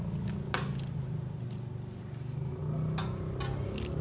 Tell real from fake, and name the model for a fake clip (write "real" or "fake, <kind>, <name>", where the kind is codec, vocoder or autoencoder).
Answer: real